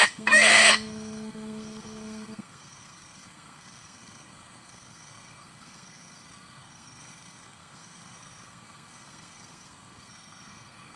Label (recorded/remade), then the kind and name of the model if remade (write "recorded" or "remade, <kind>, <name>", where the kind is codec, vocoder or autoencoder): remade, codec, SNAC